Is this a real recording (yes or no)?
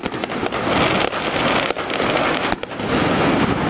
yes